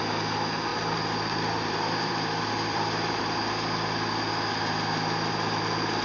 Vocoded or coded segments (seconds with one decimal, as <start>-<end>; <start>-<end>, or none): 0.7-3.2